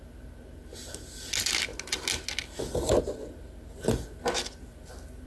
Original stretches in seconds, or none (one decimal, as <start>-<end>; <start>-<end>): 0.0-5.3

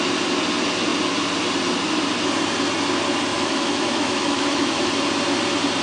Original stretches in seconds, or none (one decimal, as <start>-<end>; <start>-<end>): 0.0-3.3; 4.9-5.8